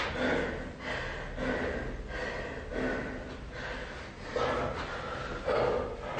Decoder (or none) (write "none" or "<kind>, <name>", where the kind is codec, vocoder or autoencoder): none